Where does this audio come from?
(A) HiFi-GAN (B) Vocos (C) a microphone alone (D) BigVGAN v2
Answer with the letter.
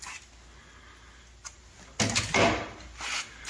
C